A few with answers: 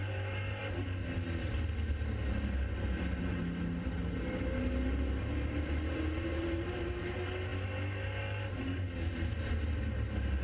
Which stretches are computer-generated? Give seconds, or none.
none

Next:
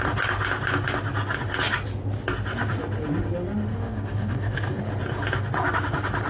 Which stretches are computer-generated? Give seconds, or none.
3.7-4.8

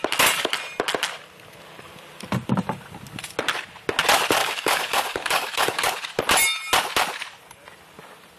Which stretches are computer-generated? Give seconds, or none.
4.4-5.9